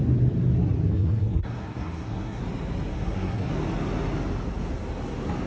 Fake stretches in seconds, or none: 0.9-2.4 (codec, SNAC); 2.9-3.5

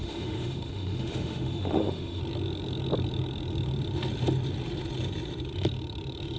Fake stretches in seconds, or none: 0.0-2.2 (autoencoder, DAC-VAE)

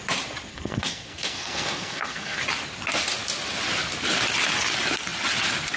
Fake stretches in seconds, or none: 0.5-2.4 (codec, SNAC)

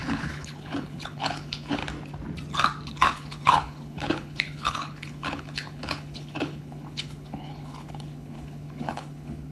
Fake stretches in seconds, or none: 0.0-1.8 (codec, HILCodec); 2.9-9.5

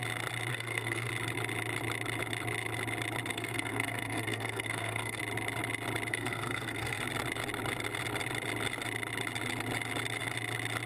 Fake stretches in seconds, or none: 0.5-1.1 (codec, SNAC); 3.3-5.2; 6.1-7.0

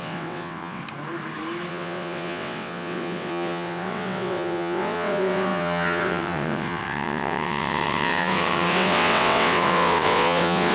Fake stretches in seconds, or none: 0.0-0.8 (vocoder, WaveNeXt); 1.7-10.7

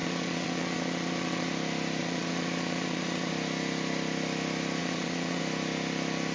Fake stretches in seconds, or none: 0.0-1.5 (vocoder, Vocos); 2.0-3.3; 4.8-5.4